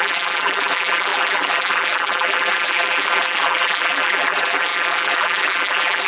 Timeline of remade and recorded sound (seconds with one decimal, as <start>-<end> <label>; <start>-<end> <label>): 0.0-6.1 remade